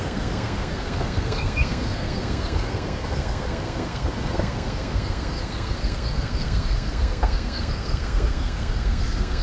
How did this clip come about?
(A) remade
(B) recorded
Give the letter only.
A